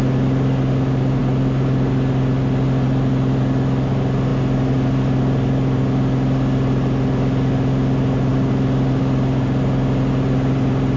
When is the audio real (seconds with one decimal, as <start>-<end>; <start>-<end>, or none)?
0.0-11.0